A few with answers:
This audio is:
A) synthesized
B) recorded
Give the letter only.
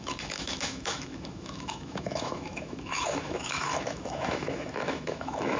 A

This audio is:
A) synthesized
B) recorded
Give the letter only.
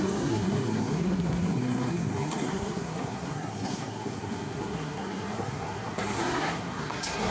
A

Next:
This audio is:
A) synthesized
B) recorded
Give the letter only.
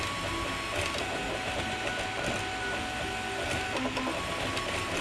B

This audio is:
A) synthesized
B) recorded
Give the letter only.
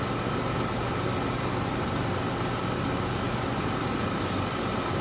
B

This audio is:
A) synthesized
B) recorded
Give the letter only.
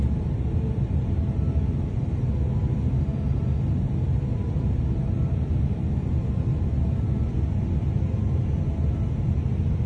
B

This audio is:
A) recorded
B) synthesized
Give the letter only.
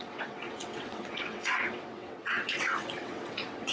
B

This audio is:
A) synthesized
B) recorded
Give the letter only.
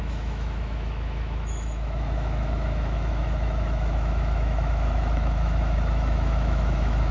A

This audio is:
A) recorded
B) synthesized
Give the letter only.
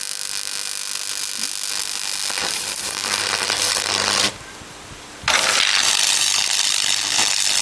A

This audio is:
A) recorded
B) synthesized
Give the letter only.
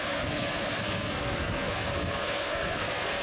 B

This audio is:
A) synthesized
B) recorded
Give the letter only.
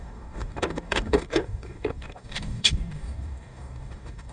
A